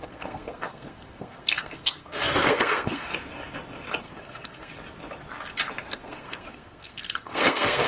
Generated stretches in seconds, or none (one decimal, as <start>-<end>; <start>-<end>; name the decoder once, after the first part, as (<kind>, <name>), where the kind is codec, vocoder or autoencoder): 0.0-3.1 (codec, SNAC); 4.0-4.7; 5.8-7.9